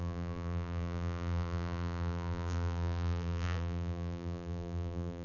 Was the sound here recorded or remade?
remade